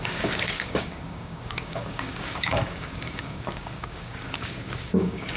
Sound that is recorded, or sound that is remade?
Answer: remade